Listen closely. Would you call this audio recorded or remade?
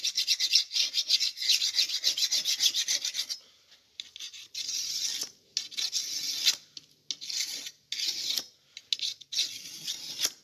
recorded